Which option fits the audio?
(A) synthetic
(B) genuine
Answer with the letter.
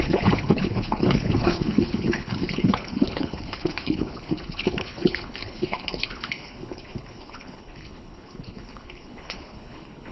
A